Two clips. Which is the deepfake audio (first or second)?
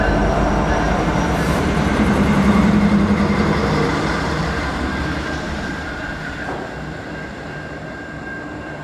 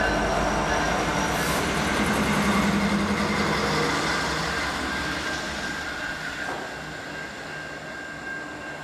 first